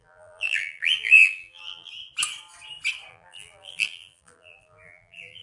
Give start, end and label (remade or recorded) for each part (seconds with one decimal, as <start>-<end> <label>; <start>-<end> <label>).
0.0-1.9 remade; 1.9-3.1 recorded; 3.1-5.4 remade